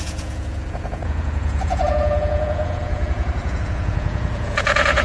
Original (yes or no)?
no